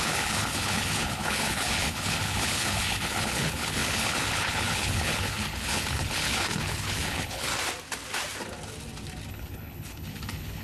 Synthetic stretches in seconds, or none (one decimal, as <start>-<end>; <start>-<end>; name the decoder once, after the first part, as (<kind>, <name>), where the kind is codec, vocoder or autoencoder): 0.0-7.5 (codec, HILCodec); 9.3-10.6